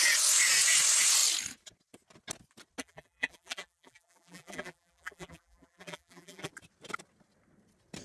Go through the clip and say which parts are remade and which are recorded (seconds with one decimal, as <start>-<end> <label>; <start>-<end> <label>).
0.0-2.8 recorded; 2.8-6.5 remade; 6.5-8.0 recorded